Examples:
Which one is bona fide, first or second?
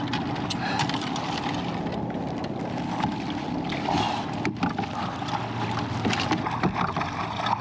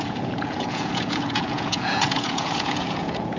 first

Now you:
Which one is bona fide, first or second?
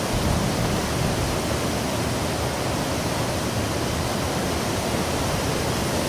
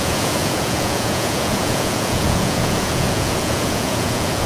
first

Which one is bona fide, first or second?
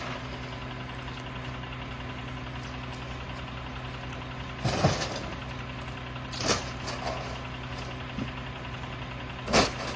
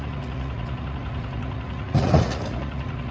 first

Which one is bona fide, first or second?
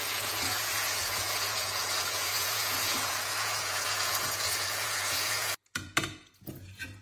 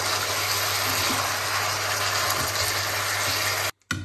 second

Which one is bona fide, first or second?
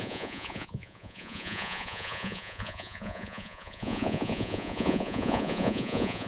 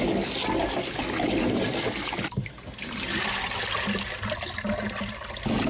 second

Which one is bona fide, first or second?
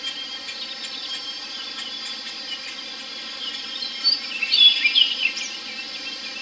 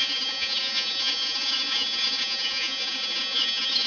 first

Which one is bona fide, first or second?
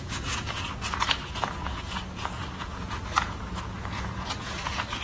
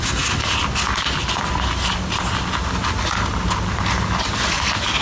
second